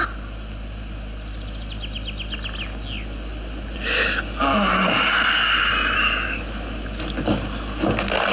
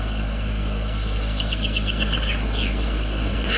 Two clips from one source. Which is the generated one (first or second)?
second